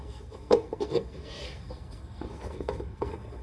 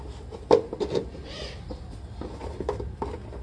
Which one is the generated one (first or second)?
first